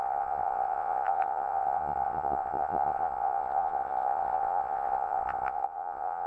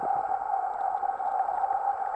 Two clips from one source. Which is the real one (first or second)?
second